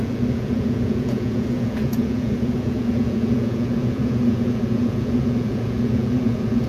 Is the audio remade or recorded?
remade